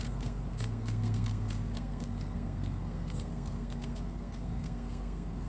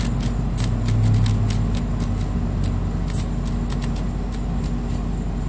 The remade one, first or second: first